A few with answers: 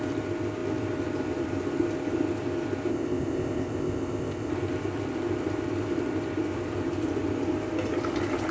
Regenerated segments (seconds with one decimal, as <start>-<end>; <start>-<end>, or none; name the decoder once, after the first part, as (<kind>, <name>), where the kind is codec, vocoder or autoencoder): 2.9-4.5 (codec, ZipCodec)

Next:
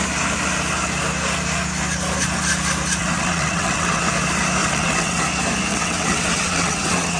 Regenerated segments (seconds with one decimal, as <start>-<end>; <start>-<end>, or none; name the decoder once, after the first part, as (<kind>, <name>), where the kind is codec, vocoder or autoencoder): 3.0-4.1 (vocoder, WaveNeXt); 4.6-5.2; 5.7-7.2

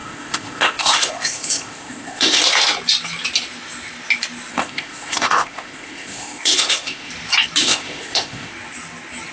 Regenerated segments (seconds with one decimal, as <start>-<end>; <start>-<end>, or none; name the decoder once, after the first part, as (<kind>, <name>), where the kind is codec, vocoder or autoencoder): 0.0-2.4 (codec, ZipCodec); 4.5-7.1; 7.6-8.5

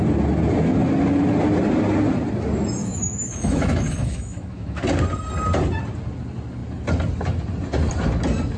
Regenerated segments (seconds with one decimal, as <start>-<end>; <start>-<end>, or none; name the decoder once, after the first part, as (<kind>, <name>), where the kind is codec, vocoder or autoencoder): 2.8-4.8 (autoencoder, DAC-VAE)

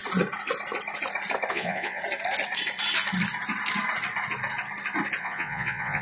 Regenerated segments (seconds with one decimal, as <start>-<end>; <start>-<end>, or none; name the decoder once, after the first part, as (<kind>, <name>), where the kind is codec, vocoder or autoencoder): 1.5-2.0 (vocoder, Vocos); 5.2-6.0

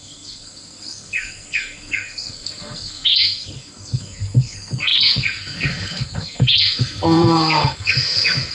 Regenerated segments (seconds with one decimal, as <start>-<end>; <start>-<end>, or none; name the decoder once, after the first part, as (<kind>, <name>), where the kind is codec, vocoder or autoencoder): 0.0-8.5 (codec, SNAC)